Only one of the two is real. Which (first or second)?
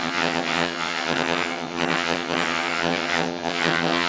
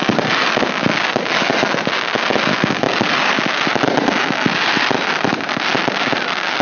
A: second